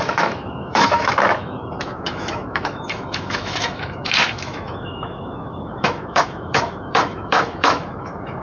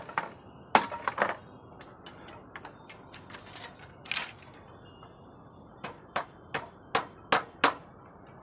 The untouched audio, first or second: second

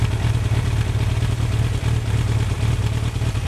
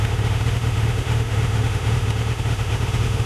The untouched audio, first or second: first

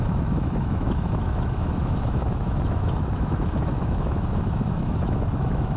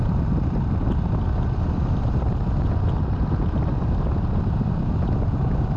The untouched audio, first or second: second